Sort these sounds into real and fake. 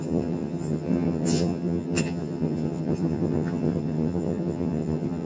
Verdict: fake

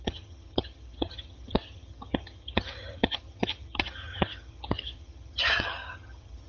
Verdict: fake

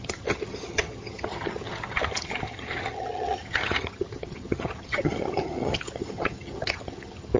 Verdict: fake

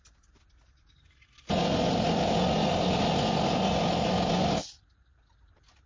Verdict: real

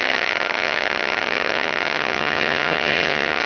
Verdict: fake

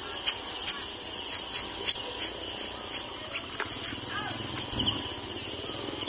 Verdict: real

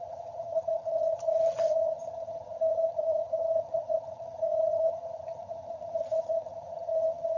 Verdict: fake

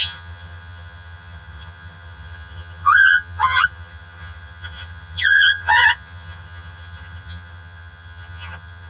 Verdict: fake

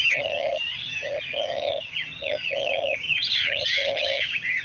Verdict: fake